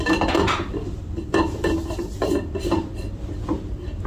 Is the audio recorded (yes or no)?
yes